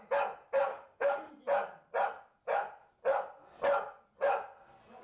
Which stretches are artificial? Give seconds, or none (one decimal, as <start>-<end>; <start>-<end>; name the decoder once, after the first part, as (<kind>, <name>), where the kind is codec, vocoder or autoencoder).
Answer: 0.7-1.3 (autoencoder, DAC-VAE)